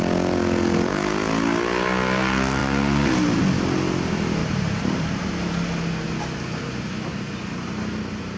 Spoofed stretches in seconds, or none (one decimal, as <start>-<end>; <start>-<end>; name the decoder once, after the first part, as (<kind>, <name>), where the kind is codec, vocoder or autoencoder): 4.4-5.5 (vocoder, BigVGAN v2); 7.1-8.4